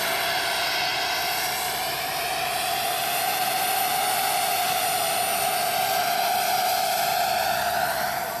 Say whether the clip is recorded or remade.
recorded